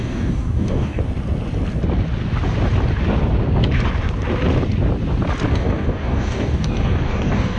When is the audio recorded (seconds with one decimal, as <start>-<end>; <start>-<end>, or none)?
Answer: 1.0-5.5